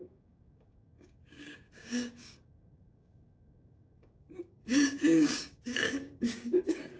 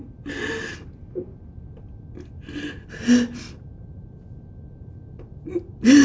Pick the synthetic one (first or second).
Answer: first